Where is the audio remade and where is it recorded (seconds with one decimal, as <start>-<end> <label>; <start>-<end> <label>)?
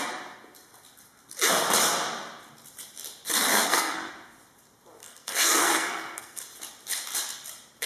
0.0-3.5 recorded; 3.5-4.1 remade; 4.1-5.0 recorded; 5.0-6.4 remade; 6.4-7.9 recorded